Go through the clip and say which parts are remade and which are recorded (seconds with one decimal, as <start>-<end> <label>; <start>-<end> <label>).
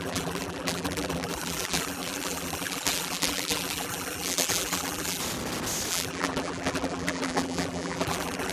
0.0-5.2 remade; 5.2-5.9 recorded; 5.9-8.5 remade